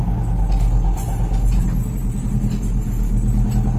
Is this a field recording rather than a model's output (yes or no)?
yes